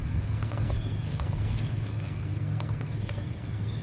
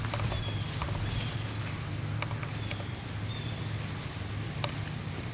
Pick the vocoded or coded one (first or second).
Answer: first